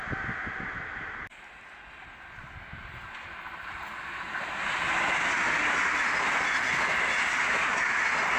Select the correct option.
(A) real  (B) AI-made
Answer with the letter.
A